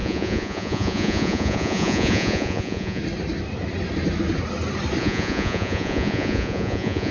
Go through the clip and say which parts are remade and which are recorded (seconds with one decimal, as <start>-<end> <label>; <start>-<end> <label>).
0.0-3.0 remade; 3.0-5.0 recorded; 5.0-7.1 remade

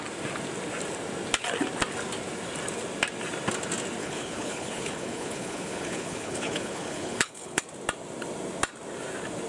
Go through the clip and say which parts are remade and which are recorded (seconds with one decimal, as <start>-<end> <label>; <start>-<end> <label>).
0.0-4.0 recorded; 4.0-7.6 remade; 7.6-9.5 recorded

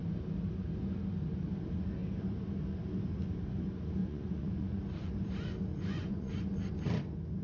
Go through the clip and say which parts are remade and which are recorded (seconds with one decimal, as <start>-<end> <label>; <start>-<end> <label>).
0.0-4.0 recorded; 4.0-4.8 remade; 4.8-5.7 recorded; 5.7-6.7 remade; 6.7-7.4 recorded